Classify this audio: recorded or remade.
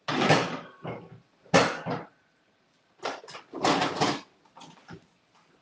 recorded